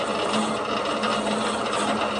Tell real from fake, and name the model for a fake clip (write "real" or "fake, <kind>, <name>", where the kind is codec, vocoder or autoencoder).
real